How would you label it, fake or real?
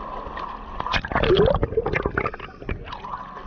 real